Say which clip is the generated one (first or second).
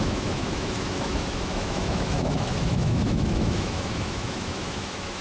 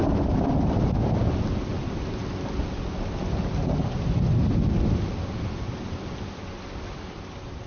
first